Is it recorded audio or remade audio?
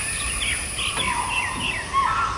recorded